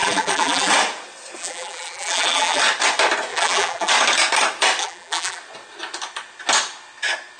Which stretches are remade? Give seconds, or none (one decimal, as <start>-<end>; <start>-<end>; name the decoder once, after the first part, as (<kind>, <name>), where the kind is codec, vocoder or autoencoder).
0.0-0.7 (vocoder, BigVGAN v2); 1.4-2.6; 3.3-3.9; 4.8-5.4